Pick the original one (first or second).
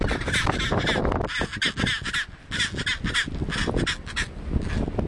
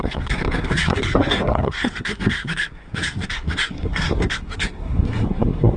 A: first